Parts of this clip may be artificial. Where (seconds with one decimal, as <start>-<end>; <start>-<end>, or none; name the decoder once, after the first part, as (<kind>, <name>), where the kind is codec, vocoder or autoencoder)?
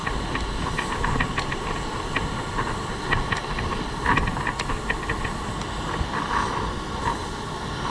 none